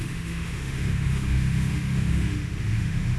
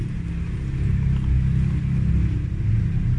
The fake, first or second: first